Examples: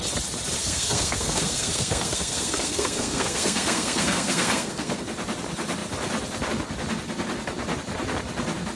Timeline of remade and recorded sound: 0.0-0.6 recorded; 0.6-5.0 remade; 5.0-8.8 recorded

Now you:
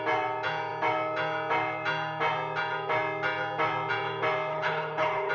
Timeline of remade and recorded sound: 0.0-4.5 recorded; 4.5-5.3 remade

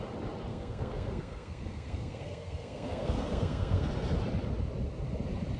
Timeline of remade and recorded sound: 0.0-0.5 recorded; 0.5-3.9 remade; 3.9-5.6 recorded

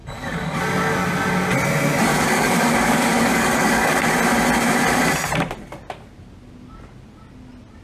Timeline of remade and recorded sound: 0.0-0.6 remade; 0.6-2.1 recorded; 2.1-4.0 remade; 4.0-7.8 recorded

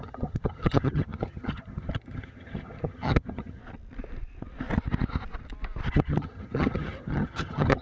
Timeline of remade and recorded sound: 0.0-3.6 remade; 3.6-5.9 recorded; 5.9-7.8 remade

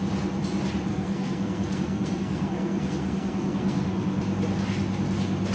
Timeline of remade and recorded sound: 0.0-0.9 recorded; 0.9-4.2 remade; 4.2-5.5 recorded

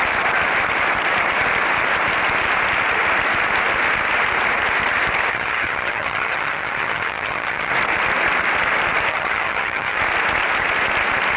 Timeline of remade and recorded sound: 0.0-5.3 recorded; 5.3-7.7 remade; 7.7-9.1 recorded; 9.1-10.0 remade; 10.0-11.4 recorded

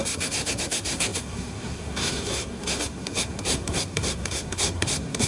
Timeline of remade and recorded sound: 0.0-5.3 remade